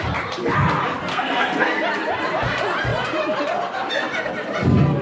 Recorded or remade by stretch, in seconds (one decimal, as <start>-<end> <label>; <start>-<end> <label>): 0.0-1.1 recorded; 1.1-1.8 remade; 1.8-5.0 recorded